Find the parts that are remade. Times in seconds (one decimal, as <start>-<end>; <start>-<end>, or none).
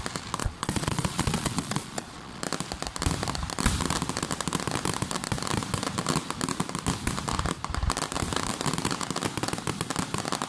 0.4-2.4